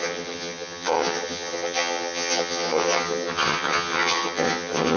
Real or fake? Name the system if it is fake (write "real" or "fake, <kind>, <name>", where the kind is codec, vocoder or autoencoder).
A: fake, vocoder, HiFi-GAN